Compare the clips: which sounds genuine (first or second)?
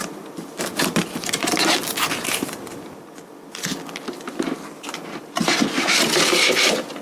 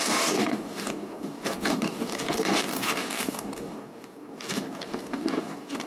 first